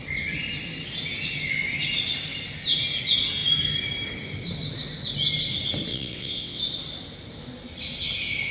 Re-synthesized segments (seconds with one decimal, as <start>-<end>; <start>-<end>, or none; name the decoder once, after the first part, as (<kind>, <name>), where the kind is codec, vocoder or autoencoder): 5.9-6.6 (vocoder, WaveNeXt)